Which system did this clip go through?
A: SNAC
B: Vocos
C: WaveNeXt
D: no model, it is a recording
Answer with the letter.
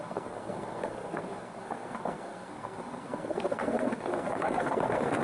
A